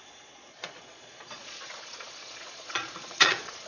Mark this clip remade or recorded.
remade